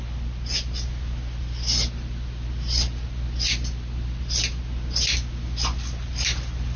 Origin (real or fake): real